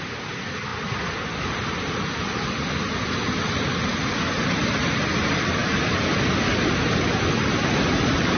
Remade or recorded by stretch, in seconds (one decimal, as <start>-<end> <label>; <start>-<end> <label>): 0.0-8.4 recorded